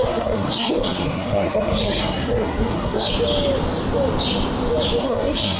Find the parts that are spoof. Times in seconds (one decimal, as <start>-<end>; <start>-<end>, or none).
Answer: 0.0-3.1; 5.0-5.6